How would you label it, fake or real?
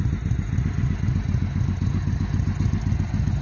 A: real